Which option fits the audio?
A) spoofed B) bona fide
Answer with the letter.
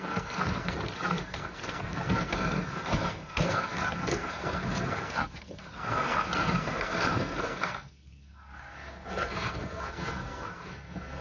A